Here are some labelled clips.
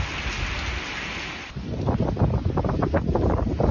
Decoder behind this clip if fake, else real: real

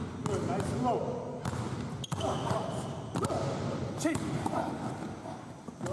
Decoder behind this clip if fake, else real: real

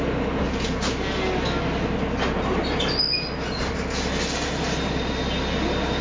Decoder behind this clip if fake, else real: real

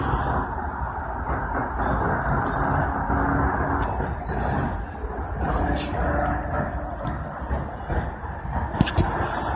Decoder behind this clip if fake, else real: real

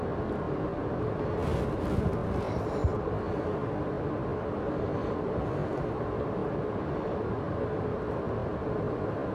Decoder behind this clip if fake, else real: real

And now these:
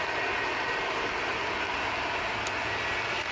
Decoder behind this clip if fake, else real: real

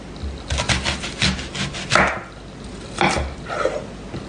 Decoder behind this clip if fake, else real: real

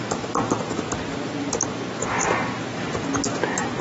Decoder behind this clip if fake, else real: real